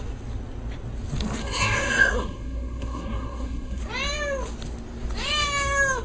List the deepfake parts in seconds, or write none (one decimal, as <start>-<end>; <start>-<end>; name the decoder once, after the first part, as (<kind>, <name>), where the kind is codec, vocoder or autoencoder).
1.4-3.8 (codec, SNAC)